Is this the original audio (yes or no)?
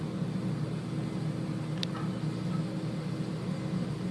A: yes